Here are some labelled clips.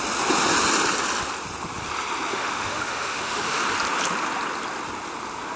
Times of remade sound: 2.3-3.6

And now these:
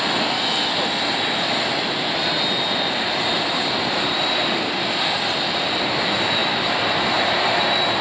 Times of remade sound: 6.4-8.0

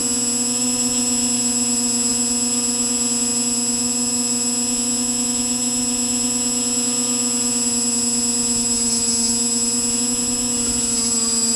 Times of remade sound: none